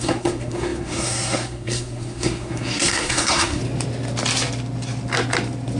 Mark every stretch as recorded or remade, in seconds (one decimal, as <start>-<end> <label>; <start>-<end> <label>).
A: 0.0-3.6 remade; 3.6-5.8 recorded